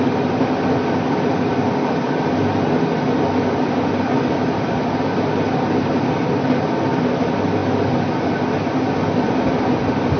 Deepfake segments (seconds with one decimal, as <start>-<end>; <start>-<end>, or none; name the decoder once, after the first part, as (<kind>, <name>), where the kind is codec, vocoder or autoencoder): none